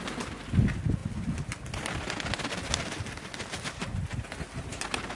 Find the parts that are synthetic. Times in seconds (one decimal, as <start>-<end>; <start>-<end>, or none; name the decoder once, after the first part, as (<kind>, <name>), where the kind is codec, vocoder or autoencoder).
none